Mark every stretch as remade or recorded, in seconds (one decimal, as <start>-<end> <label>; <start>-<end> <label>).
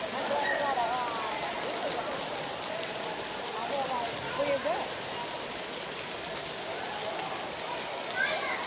0.0-8.7 recorded